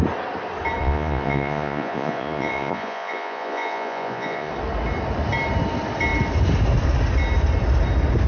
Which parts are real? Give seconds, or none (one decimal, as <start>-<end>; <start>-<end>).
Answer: 0.0-0.8; 4.5-8.3